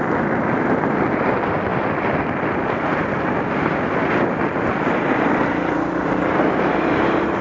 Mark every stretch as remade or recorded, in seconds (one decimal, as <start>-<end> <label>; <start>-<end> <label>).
0.0-7.4 remade